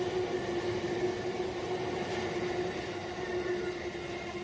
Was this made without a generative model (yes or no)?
yes